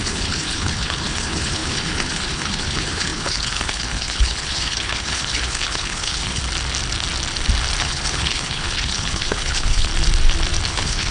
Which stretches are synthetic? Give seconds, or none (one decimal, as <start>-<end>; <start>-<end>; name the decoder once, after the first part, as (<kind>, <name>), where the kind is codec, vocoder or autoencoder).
0.0-6.4 (codec, HILCodec); 7.8-9.9; 10.7-11.1